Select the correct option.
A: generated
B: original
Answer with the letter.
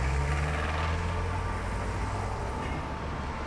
B